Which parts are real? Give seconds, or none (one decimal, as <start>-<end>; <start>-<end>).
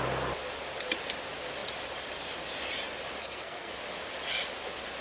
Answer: 0.0-3.2; 3.7-5.0